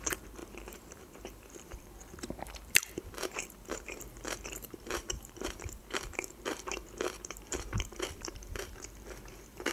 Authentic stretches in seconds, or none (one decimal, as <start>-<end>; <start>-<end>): none